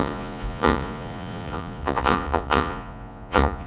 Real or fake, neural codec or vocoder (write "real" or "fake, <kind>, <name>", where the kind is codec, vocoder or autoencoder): fake, vocoder, Vocos